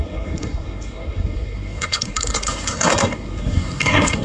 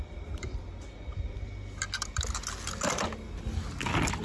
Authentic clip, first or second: second